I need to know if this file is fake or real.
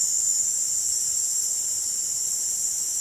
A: real